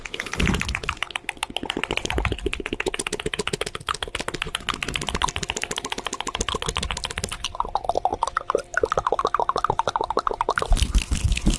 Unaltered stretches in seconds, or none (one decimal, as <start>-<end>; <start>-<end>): 0.0-11.6